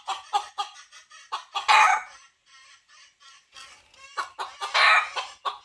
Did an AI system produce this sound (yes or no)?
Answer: no